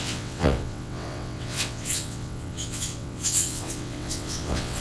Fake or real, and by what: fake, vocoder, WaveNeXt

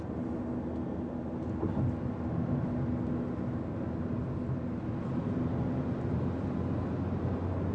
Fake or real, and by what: real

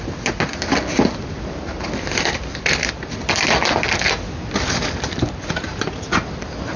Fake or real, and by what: real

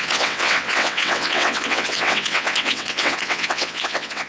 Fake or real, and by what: fake, vocoder, WaveNeXt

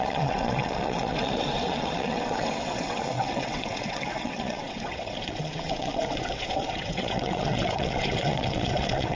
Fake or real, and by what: fake, vocoder, WaveNeXt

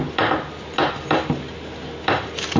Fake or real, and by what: real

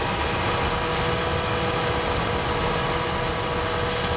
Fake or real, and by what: real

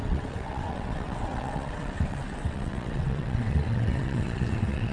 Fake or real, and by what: fake, vocoder, WaveNeXt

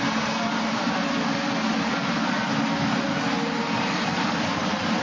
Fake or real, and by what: real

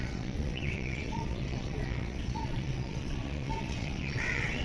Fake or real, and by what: fake, vocoder, WaveNeXt